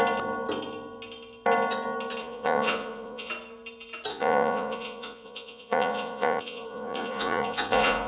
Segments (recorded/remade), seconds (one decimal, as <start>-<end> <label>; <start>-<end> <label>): 0.0-2.2 recorded; 2.2-3.3 remade; 3.3-4.1 recorded; 4.1-8.1 remade